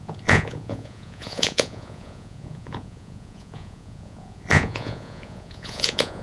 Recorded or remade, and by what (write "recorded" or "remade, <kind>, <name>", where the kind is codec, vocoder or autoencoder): remade, vocoder, Vocos